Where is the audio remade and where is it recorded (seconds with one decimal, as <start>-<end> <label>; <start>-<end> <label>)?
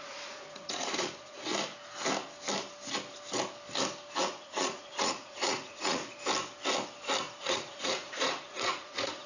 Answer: 0.0-1.5 remade; 1.5-4.2 recorded; 4.2-6.0 remade; 6.0-7.4 recorded; 7.4-9.3 remade